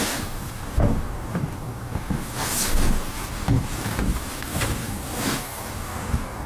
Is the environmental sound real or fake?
fake